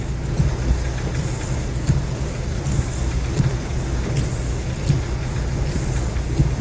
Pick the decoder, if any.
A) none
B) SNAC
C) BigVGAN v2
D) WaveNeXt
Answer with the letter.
A